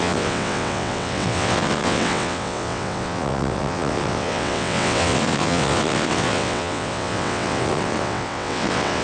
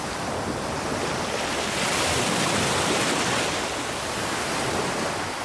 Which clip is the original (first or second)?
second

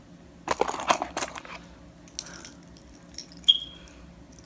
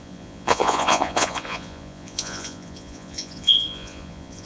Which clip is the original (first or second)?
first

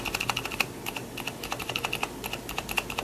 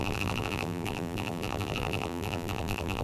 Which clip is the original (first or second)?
first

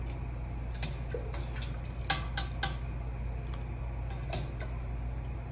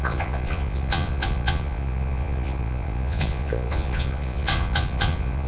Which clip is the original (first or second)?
first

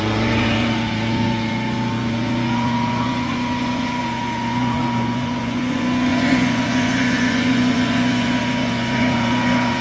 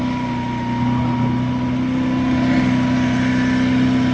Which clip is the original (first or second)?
second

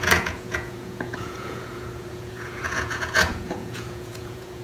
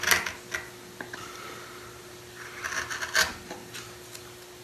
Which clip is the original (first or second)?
second